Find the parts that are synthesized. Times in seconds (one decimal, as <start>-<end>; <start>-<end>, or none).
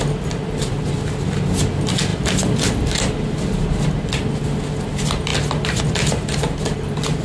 none